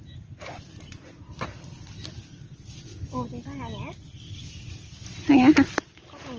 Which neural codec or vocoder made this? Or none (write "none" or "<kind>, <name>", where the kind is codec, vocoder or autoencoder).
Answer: none